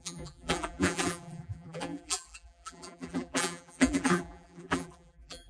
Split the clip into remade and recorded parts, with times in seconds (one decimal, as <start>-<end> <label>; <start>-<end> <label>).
0.0-5.5 remade